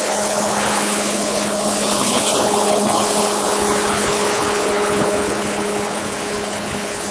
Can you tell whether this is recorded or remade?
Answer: remade